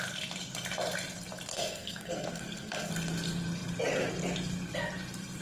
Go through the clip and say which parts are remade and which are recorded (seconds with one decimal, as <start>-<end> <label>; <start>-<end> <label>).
0.0-1.5 recorded; 1.5-2.9 remade; 2.9-5.4 recorded